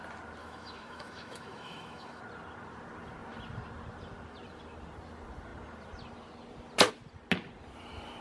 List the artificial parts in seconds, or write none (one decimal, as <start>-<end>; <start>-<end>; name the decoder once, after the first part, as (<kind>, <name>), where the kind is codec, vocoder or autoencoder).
0.4-2.2 (autoencoder, DAC-VAE)